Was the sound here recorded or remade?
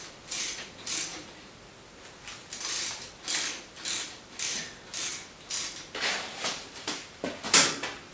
recorded